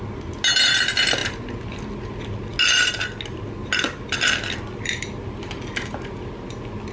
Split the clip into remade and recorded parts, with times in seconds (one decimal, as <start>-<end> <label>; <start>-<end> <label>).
0.0-6.9 recorded